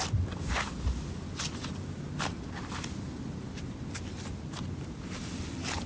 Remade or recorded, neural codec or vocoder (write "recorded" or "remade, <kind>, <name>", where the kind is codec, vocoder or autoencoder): recorded